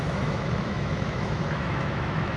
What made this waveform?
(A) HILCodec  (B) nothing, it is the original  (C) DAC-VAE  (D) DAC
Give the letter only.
C